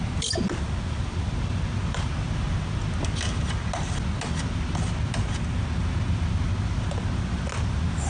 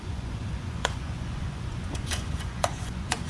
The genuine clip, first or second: first